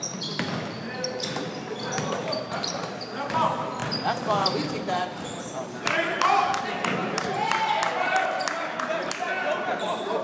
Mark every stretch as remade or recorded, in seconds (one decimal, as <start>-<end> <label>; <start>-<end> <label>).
0.0-2.2 recorded; 2.2-2.9 remade; 2.9-3.8 recorded; 3.8-6.6 remade; 6.6-7.0 recorded; 7.0-7.7 remade; 7.7-10.2 recorded